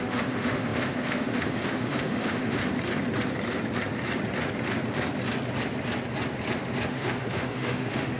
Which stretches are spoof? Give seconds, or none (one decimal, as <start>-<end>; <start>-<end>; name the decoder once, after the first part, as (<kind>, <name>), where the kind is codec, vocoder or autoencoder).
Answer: 0.0-2.6 (autoencoder, DAC-VAE); 6.9-8.2